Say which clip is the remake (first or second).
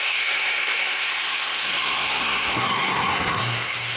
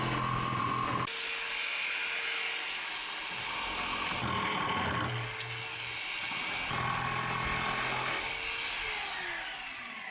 first